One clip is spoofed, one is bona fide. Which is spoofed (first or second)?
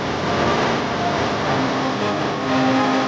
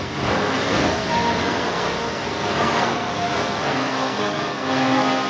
second